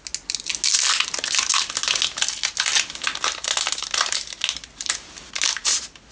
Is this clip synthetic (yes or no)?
no